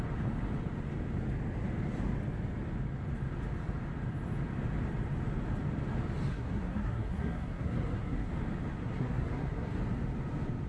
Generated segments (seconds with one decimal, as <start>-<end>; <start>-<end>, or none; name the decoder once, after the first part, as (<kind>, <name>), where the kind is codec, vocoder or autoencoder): 6.3-8.3 (codec, SNAC); 8.8-9.8